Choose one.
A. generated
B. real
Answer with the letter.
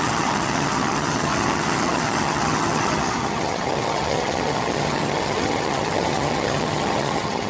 A